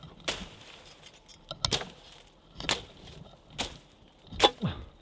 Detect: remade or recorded recorded